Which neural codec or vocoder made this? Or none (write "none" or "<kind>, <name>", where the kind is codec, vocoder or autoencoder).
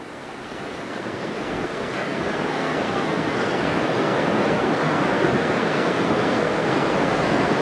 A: codec, SNAC